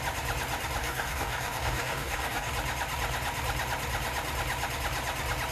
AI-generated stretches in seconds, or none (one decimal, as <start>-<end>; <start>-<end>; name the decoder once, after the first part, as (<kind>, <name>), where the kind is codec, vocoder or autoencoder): 0.8-2.5 (codec, DAC)